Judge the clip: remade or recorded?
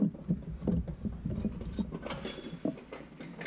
recorded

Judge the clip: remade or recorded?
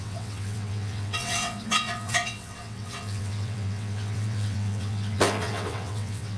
remade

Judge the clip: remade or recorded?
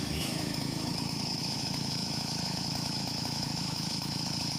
remade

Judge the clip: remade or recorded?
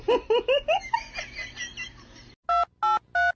recorded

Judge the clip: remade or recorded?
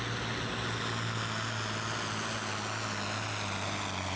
recorded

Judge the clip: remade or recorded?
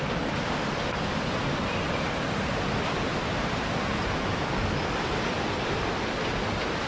recorded